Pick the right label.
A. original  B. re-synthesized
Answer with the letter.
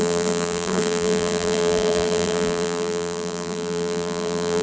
B